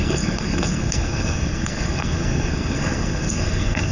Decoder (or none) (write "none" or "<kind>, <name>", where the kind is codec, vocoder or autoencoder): codec, SNAC